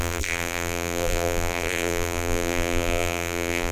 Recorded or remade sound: remade